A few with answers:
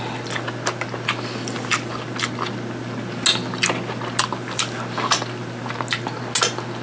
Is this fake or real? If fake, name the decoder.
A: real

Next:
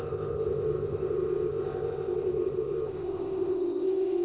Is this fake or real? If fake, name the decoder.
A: fake, codec, ZipCodec